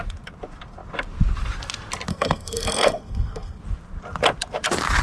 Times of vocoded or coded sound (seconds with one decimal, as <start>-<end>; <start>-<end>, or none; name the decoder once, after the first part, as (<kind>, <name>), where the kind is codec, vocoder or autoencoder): 2.1-3.6 (codec, SNAC)